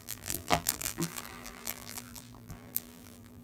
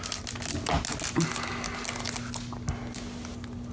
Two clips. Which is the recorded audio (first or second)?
second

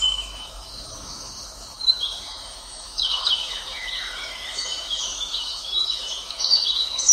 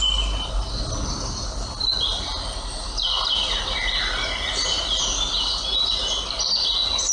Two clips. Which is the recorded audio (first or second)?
second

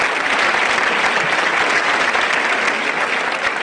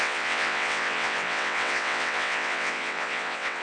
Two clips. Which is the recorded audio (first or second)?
first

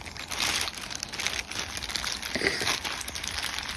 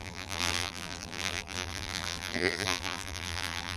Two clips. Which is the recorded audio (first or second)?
first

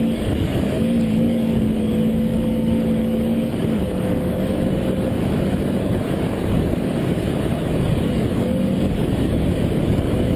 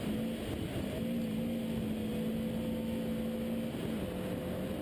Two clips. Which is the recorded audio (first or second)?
second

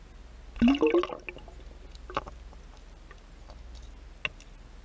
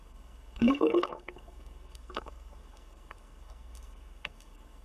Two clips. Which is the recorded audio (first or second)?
first